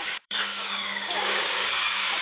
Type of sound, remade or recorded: remade